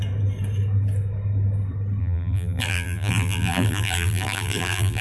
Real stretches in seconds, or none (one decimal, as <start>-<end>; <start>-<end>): 0.0-2.0